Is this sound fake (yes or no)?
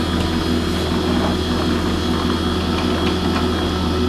no